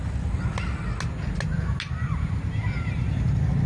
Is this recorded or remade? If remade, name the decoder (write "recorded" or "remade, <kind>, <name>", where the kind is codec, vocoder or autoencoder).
recorded